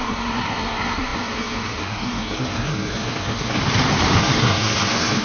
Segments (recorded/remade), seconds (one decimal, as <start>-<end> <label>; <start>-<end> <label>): 0.0-3.6 remade; 3.6-4.2 recorded; 4.2-5.2 remade